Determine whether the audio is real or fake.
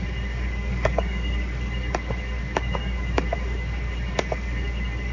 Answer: fake